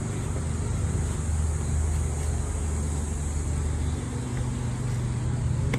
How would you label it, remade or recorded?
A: recorded